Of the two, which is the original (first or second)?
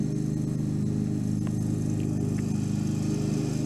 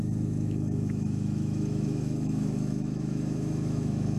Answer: first